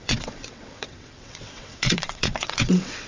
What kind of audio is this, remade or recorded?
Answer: remade